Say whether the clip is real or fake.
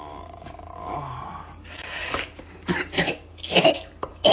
fake